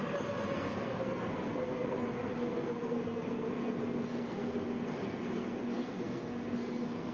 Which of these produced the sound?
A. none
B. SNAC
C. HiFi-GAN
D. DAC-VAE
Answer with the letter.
B